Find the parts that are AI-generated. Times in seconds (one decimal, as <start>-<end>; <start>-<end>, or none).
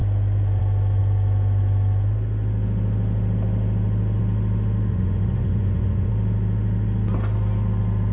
4.9-6.1